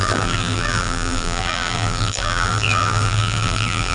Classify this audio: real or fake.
fake